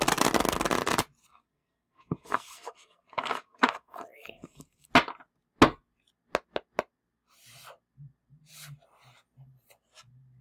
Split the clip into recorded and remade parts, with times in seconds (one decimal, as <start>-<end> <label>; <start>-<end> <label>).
0.0-1.3 recorded; 1.3-4.9 remade; 4.9-10.4 recorded